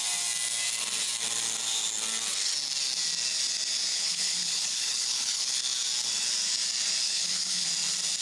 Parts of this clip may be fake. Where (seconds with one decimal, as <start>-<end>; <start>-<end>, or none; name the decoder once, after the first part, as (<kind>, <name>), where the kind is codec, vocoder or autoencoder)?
3.9-5.6 (codec, HILCodec); 7.0-7.7